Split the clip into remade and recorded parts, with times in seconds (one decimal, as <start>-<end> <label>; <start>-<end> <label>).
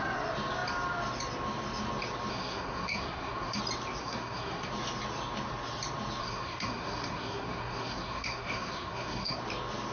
0.0-2.3 recorded; 2.3-3.6 remade; 3.6-4.0 recorded; 4.0-4.7 remade; 4.7-6.2 recorded; 6.2-9.4 remade; 9.4-9.9 recorded